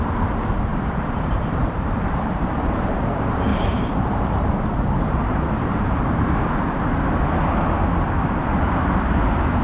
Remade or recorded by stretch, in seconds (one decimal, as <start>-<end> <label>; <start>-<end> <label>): 0.0-0.7 recorded; 0.7-2.9 remade; 2.9-3.5 recorded; 3.5-6.5 remade; 6.5-8.5 recorded; 8.5-9.6 remade